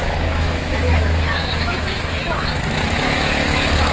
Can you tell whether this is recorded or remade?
remade